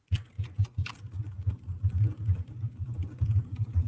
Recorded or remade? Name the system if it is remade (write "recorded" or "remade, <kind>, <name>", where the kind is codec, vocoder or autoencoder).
recorded